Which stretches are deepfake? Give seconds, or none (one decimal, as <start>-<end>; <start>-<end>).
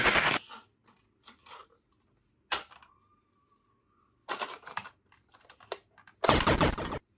none